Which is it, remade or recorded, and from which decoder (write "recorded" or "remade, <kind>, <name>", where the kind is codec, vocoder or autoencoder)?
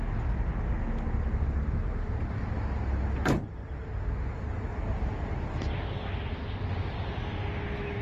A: recorded